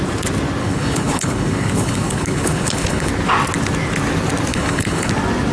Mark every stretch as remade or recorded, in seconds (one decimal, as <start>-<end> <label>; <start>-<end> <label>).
0.0-0.6 recorded; 0.6-3.1 remade; 3.1-4.5 recorded; 4.5-5.1 remade; 5.1-5.5 recorded